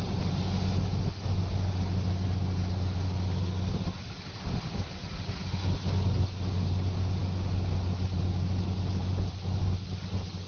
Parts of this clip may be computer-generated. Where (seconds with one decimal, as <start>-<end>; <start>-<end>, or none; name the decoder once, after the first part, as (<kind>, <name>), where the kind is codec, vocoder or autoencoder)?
none